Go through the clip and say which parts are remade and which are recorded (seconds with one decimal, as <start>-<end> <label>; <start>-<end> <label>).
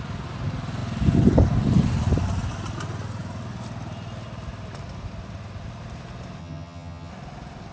0.0-6.4 recorded; 6.4-7.1 remade; 7.1-7.7 recorded